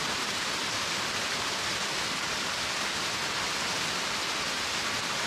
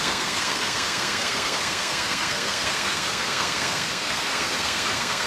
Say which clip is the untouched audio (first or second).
first